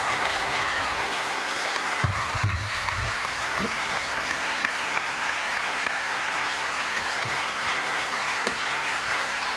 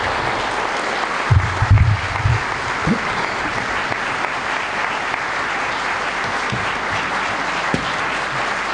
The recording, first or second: second